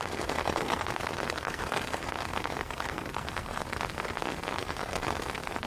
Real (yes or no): no